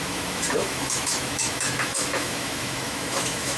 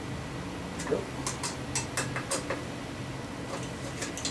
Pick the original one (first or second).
second